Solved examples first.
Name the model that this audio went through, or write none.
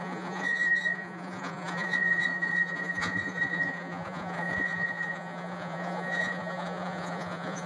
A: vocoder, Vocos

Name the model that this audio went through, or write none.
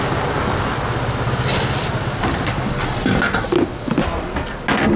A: none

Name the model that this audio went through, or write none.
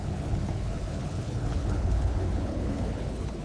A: codec, HILCodec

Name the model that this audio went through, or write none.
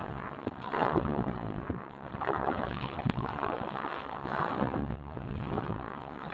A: vocoder, WaveNeXt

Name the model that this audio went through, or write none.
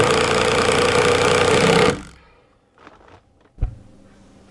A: none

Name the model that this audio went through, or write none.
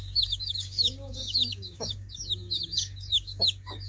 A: codec, DAC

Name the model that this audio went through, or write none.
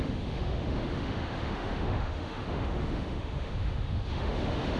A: autoencoder, DAC-VAE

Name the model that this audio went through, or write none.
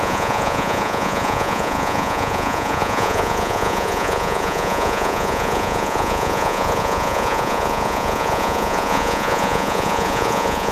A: vocoder, Vocos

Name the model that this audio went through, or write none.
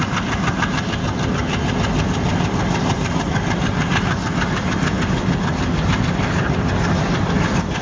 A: none